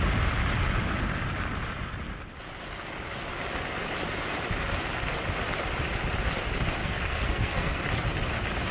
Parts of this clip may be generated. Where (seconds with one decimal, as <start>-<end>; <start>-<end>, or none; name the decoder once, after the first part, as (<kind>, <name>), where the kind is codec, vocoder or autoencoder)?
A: 6.8-7.8 (codec, SNAC)